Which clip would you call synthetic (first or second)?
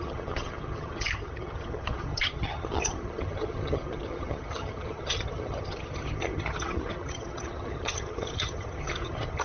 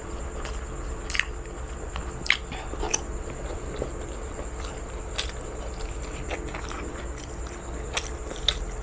first